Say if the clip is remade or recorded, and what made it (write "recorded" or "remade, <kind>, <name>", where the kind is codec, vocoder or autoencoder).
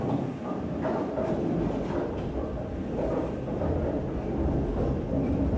recorded